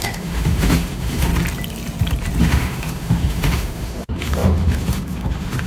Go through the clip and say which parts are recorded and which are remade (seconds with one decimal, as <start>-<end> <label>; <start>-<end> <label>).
0.0-1.3 remade; 1.3-2.4 recorded; 2.4-5.7 remade